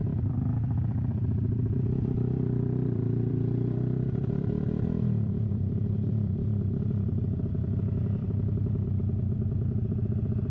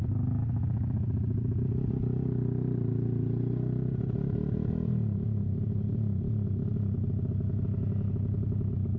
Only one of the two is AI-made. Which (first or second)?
first